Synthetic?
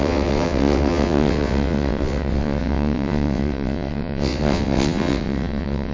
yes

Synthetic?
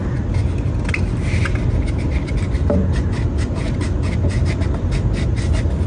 no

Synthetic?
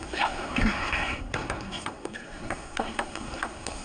yes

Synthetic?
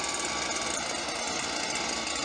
no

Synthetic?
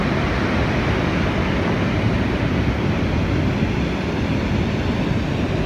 no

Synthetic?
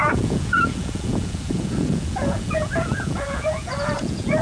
yes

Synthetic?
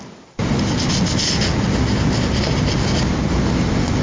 no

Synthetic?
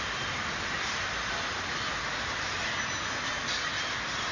no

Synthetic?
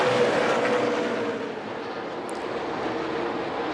no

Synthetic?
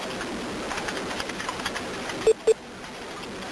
no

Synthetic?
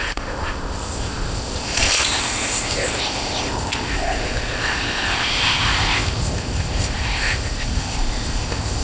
yes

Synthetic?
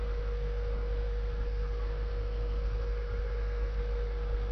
yes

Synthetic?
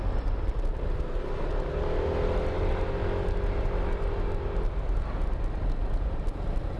no